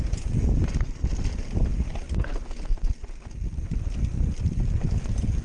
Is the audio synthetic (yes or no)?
no